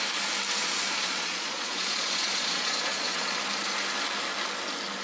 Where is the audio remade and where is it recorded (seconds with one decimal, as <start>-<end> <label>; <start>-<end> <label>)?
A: 0.0-0.6 recorded; 0.6-3.4 remade; 3.4-5.0 recorded